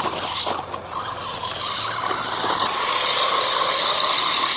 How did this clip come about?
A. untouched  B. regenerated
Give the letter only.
A